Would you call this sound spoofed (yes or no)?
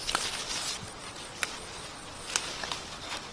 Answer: no